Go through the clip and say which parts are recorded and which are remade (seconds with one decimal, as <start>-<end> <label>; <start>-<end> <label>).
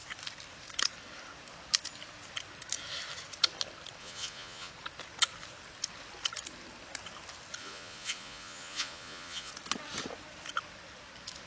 0.0-4.0 recorded; 4.0-4.7 remade; 4.7-7.6 recorded; 7.6-9.5 remade; 9.5-11.5 recorded